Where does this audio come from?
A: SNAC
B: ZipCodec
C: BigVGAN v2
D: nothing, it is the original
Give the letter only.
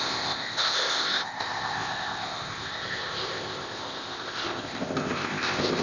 B